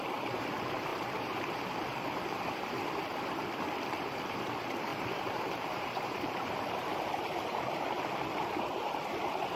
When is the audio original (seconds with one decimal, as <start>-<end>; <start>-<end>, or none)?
0.0-0.9; 1.5-4.9; 7.9-9.6